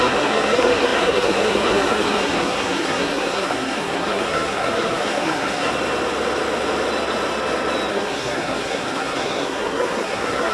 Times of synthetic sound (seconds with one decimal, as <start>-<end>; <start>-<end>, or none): 0.0-5.7; 7.9-10.5